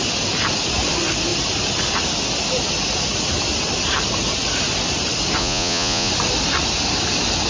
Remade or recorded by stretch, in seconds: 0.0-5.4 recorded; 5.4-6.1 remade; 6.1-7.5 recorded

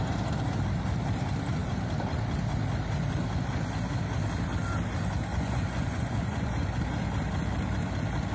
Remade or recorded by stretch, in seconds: 0.0-5.3 recorded; 5.3-6.8 remade; 6.8-8.3 recorded

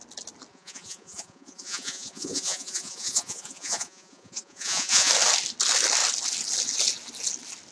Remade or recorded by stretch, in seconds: 0.0-0.5 recorded; 0.5-5.1 remade; 5.1-7.7 recorded

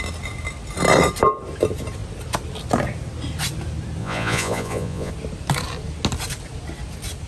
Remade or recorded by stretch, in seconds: 0.0-4.0 recorded; 4.0-5.1 remade; 5.1-7.3 recorded

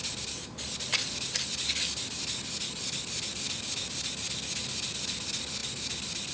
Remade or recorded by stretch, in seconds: 0.0-6.3 recorded

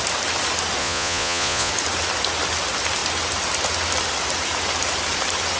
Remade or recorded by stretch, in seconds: 0.0-0.8 recorded; 0.8-1.7 remade; 1.7-5.6 recorded

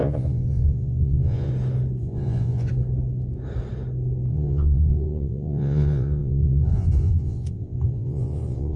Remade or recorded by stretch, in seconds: 0.0-1.5 remade; 1.5-2.0 recorded; 2.0-2.7 remade; 2.7-4.3 recorded; 4.3-8.8 remade

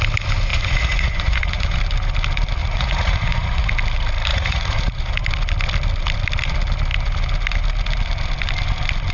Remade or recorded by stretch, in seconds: 0.0-0.5 recorded; 0.5-1.8 remade; 1.8-2.6 recorded; 2.6-3.7 remade; 3.7-4.3 recorded; 4.3-5.1 remade; 5.1-9.1 recorded